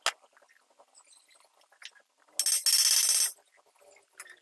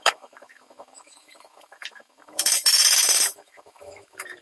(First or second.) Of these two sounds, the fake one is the second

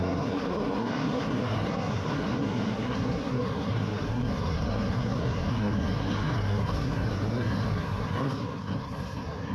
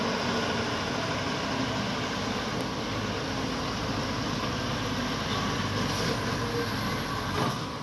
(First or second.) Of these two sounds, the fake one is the first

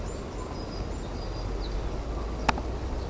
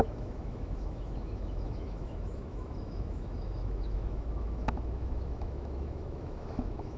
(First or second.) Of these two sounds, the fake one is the second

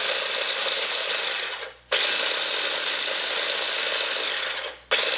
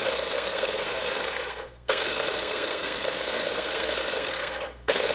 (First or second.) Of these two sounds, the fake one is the second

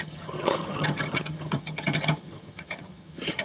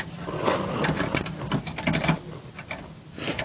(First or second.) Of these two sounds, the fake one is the first